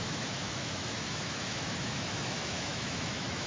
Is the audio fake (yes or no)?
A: yes